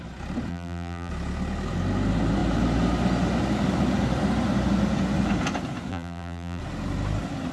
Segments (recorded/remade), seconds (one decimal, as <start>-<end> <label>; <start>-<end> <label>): 0.0-0.5 recorded; 0.5-1.1 remade; 1.1-5.9 recorded; 5.9-6.6 remade; 6.6-7.5 recorded